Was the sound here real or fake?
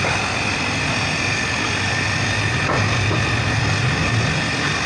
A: real